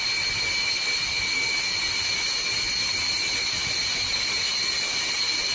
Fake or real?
real